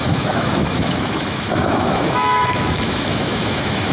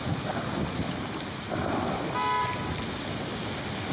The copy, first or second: first